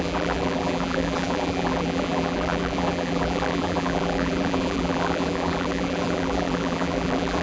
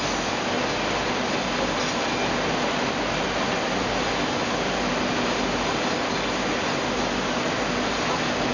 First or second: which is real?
second